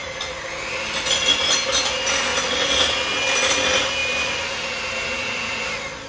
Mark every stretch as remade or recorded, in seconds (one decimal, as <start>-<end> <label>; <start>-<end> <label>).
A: 0.0-0.7 remade; 0.7-6.1 recorded